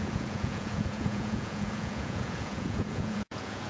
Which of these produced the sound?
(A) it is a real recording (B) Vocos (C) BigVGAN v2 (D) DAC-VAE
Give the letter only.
B